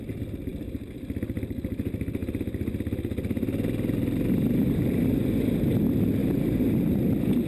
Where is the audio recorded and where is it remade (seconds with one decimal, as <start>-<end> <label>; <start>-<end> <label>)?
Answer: 0.0-6.2 recorded; 6.2-7.5 remade